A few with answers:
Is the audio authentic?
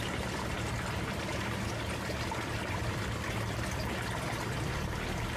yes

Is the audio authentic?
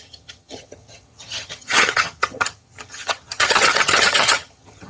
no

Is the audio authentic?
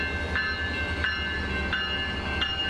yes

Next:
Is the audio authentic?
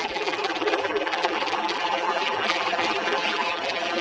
no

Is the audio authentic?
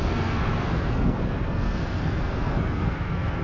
no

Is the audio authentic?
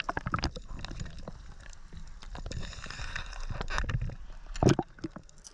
yes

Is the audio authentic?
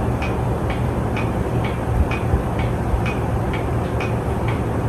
no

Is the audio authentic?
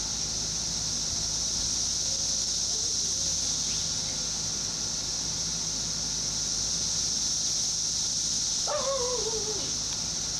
yes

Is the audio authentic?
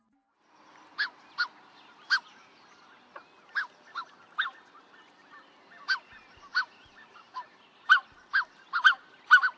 yes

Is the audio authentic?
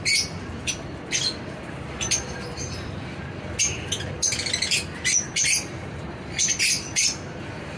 no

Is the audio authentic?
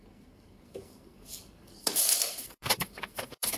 no